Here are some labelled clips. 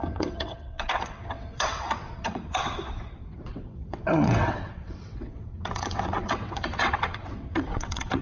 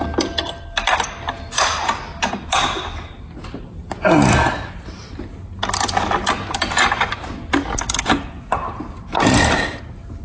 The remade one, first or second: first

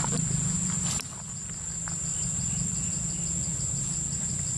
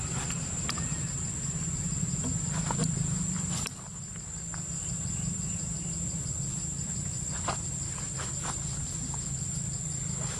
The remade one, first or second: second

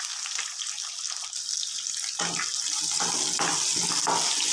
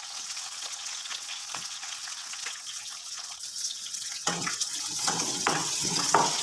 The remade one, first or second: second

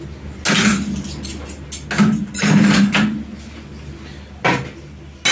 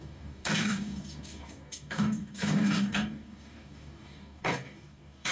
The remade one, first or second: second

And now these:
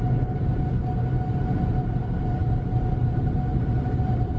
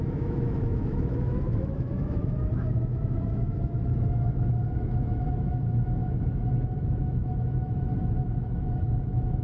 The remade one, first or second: second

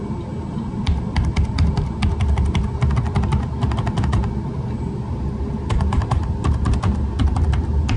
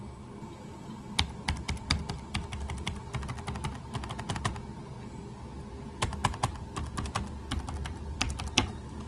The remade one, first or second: first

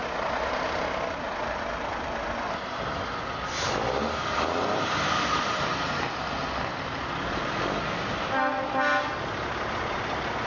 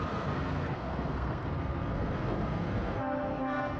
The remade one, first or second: second